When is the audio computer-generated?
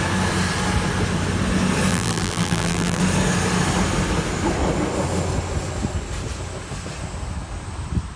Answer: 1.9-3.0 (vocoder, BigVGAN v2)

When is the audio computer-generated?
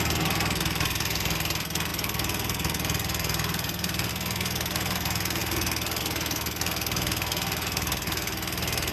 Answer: 0.0-8.9 (codec, SNAC)